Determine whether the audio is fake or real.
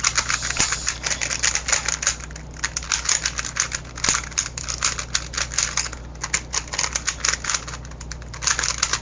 real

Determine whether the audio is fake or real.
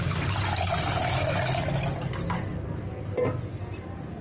real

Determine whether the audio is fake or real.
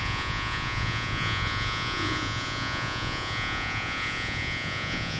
fake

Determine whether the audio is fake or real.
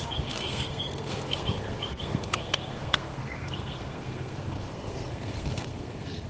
fake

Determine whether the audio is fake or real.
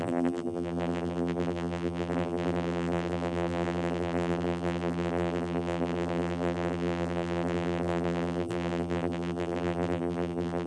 fake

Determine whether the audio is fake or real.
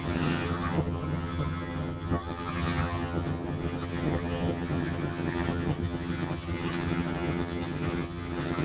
fake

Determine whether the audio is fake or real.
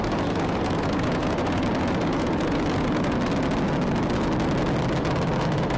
real